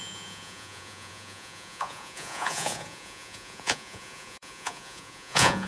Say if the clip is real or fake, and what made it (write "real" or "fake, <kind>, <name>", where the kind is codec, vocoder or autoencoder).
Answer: fake, vocoder, Vocos